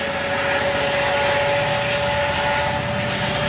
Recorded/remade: recorded